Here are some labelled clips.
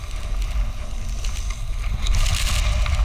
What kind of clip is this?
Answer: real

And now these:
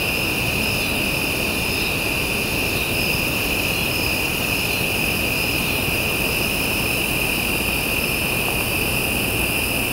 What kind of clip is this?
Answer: real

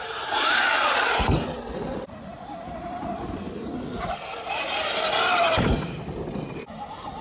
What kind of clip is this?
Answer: real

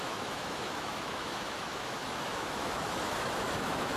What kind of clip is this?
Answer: fake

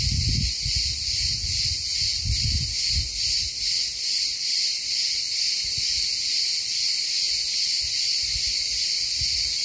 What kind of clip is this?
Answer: real